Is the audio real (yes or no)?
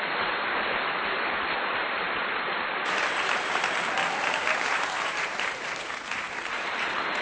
no